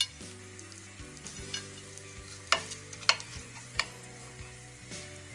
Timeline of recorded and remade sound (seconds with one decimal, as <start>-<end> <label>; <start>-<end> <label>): 0.0-3.3 recorded; 3.3-4.3 remade; 4.3-5.3 recorded